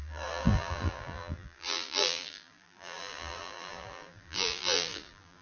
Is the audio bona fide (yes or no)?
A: no